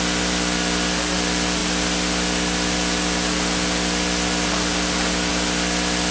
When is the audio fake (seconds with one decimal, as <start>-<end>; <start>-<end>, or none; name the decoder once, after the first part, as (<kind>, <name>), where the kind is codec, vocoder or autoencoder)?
none